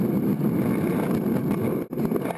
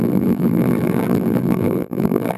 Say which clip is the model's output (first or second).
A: second